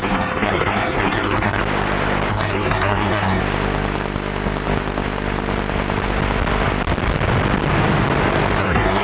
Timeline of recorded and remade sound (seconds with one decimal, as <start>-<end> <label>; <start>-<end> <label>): 0.0-1.6 remade; 1.6-2.3 recorded; 2.3-3.4 remade; 3.4-8.6 recorded; 8.6-9.0 remade